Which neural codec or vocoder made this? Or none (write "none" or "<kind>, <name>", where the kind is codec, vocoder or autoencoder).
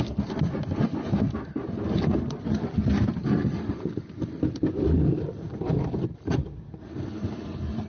none